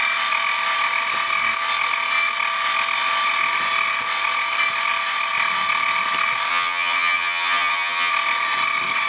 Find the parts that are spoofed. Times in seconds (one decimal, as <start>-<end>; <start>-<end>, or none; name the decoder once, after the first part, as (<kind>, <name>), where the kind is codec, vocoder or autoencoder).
6.5-8.1 (vocoder, HiFi-GAN)